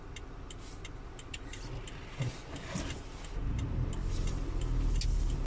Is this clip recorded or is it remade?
recorded